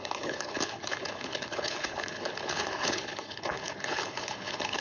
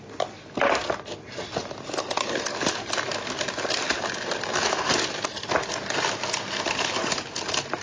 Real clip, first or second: second